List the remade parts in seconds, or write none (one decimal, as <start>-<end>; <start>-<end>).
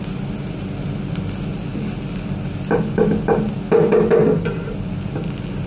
none